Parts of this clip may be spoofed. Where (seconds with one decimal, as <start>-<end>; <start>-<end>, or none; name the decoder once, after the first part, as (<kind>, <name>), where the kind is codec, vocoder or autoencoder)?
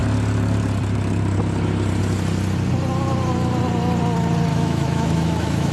4.5-5.7 (autoencoder, DAC-VAE)